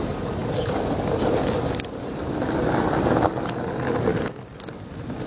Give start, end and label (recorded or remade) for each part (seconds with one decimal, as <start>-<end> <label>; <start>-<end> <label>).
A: 0.0-4.1 recorded; 4.1-4.6 remade; 4.6-5.3 recorded